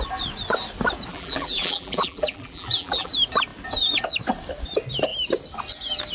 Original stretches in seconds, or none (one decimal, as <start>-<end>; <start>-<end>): 0.0-1.1; 3.1-6.1